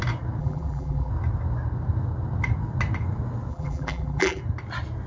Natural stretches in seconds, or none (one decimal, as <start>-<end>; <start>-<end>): 0.0-0.4; 1.1-3.5; 4.4-5.1

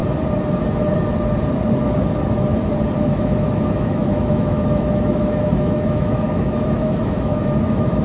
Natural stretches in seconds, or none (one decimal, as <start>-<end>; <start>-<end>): 0.0-3.0

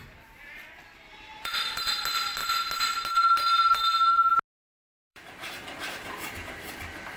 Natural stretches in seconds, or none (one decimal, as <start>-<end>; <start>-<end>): 0.0-1.3; 2.0-5.1; 6.7-7.2

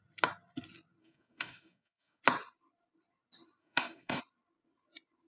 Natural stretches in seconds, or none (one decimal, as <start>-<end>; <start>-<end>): 0.0-1.0; 2.2-3.6; 4.2-5.3

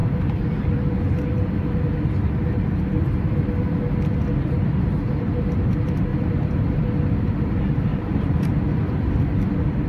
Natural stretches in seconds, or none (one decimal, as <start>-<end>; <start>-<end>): 0.6-6.1; 6.8-7.9; 8.5-9.9